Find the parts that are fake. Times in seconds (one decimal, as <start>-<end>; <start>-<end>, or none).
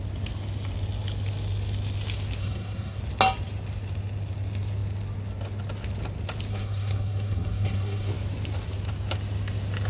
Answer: 2.4-3.0; 6.5-8.1